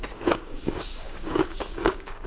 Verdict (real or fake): fake